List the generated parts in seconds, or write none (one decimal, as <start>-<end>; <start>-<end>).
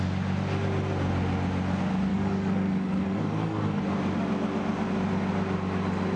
2.1-3.8